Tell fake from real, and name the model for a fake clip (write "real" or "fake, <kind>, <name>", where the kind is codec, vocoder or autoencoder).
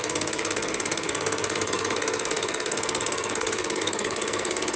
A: fake, codec, SNAC